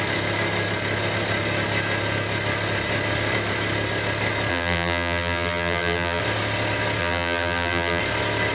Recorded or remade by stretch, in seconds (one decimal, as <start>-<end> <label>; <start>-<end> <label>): 0.0-4.5 recorded; 4.5-6.2 remade; 6.2-7.0 recorded; 7.0-8.0 remade; 8.0-8.5 recorded